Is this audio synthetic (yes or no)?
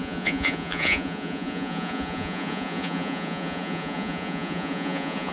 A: yes